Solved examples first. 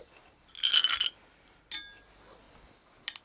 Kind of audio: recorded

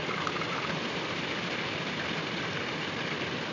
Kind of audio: recorded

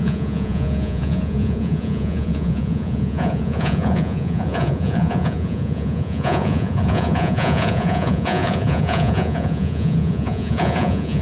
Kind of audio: remade